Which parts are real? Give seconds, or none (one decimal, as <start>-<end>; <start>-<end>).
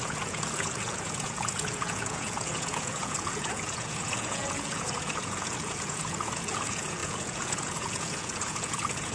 none